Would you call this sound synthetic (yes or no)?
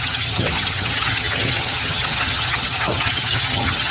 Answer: yes